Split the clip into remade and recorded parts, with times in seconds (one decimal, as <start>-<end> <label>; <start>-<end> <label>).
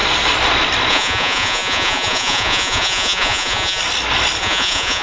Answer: 0.0-0.9 recorded; 0.9-3.8 remade; 3.8-4.4 recorded; 4.4-5.0 remade